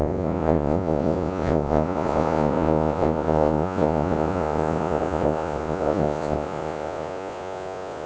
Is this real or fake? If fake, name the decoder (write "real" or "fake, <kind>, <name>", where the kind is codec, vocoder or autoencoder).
fake, vocoder, Vocos